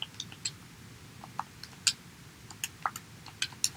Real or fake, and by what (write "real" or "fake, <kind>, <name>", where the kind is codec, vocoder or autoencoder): real